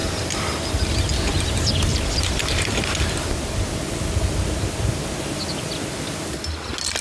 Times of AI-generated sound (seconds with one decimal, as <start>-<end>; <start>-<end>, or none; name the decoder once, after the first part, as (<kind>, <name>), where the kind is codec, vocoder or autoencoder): none